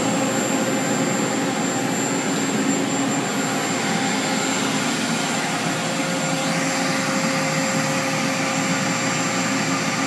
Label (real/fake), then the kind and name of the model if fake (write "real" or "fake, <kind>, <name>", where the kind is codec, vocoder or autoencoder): real